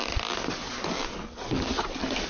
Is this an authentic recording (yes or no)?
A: yes